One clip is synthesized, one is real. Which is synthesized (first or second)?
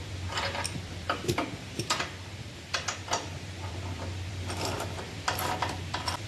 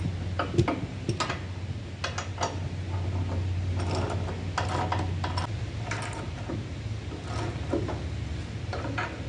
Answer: first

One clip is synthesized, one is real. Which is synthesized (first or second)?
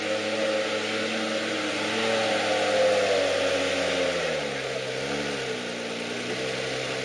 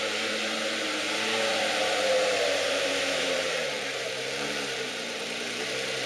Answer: second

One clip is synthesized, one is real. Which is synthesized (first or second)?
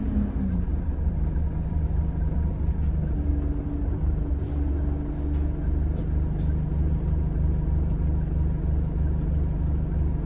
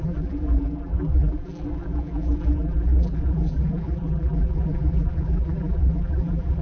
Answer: second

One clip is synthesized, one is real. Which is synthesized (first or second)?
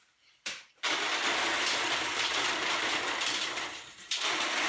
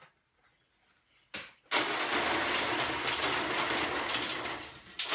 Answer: first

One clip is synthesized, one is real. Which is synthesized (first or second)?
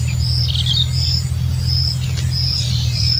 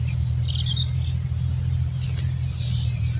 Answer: second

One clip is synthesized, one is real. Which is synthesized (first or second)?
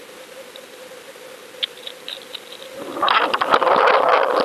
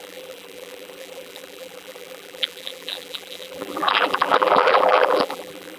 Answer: second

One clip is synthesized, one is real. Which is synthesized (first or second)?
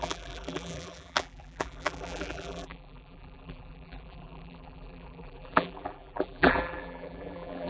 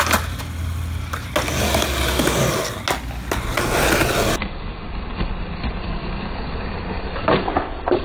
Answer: first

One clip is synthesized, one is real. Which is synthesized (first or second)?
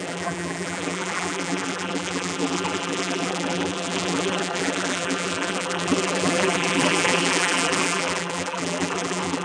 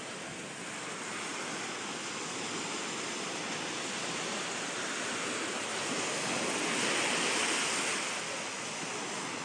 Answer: first